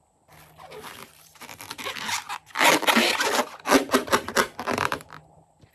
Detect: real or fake fake